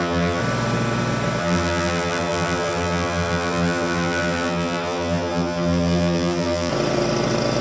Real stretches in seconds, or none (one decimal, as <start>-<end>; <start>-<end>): 0.4-1.4; 6.7-7.6